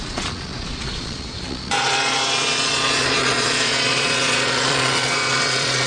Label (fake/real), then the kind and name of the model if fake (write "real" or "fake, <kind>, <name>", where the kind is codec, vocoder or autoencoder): fake, vocoder, Vocos